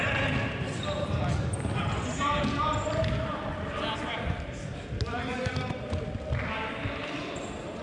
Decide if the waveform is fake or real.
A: real